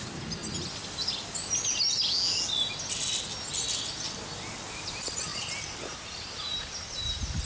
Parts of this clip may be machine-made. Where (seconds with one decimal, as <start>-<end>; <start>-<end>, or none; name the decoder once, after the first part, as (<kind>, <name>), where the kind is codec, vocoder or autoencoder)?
0.0-0.4 (vocoder, BigVGAN v2); 4.7-7.5